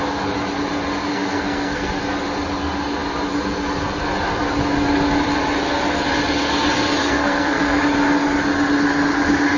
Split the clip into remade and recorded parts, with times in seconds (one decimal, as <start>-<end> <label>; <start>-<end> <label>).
0.0-1.1 recorded; 1.1-2.0 remade; 2.0-7.0 recorded; 7.0-7.8 remade; 7.8-9.6 recorded